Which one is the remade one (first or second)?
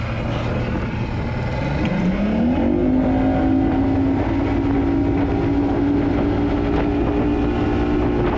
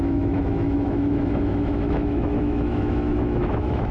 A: second